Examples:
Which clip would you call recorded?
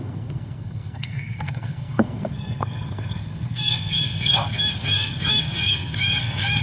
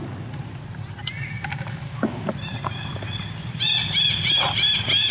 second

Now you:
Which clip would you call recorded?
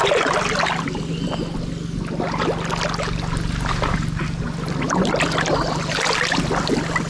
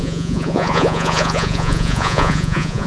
first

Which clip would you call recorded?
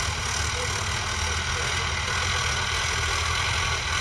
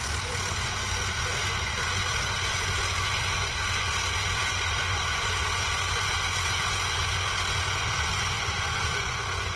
first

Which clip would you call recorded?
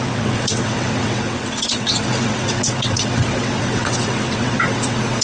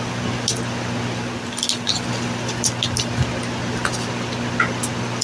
second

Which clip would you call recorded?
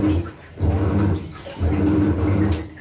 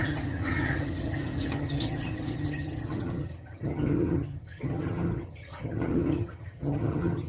first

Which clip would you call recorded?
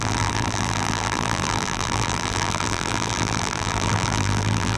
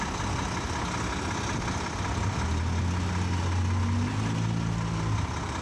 second